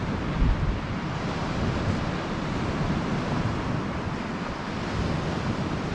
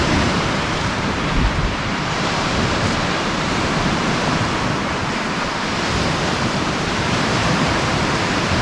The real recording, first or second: first